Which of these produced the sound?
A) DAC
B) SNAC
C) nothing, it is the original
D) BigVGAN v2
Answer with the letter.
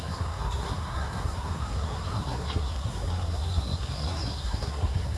B